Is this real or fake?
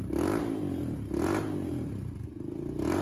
real